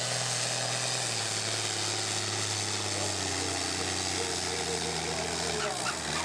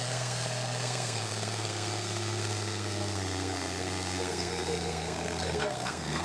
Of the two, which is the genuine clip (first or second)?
first